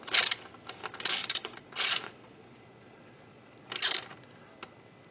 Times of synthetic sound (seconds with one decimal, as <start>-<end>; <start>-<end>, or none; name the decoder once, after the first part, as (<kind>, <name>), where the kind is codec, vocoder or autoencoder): 1.2-3.5 (vocoder, Vocos)